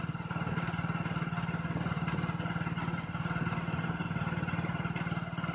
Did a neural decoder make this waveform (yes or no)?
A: no